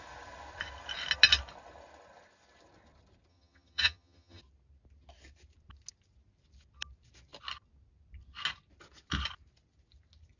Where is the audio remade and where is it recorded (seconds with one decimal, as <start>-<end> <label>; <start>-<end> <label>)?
0.0-3.3 recorded; 3.3-4.4 remade; 4.4-10.4 recorded